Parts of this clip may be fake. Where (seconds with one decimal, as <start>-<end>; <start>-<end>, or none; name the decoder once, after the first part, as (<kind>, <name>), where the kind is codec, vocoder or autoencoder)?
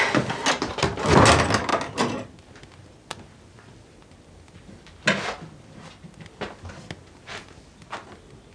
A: none